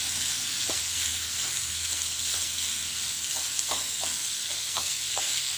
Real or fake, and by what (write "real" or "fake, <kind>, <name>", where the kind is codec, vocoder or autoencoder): fake, codec, SNAC